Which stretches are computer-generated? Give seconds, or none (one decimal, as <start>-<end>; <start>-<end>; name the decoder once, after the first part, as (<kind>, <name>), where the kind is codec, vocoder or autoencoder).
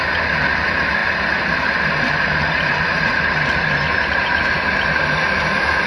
none